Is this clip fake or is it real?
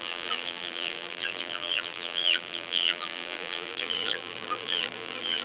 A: fake